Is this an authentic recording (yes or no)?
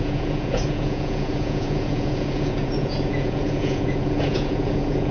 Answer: no